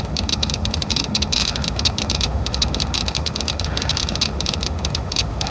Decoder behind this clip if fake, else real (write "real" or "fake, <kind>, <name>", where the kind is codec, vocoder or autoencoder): fake, autoencoder, DAC-VAE